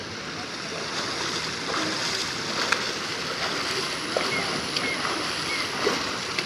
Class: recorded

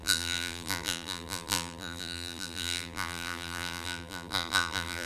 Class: remade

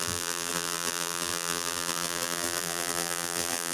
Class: remade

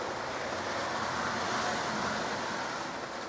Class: recorded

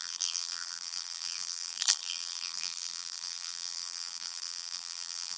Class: remade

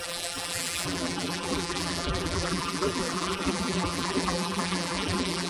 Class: remade